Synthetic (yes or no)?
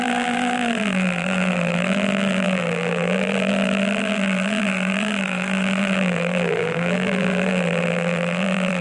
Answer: yes